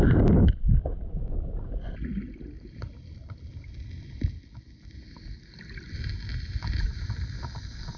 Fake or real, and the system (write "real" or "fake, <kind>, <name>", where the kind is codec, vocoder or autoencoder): real